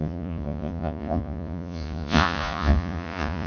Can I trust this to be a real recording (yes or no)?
no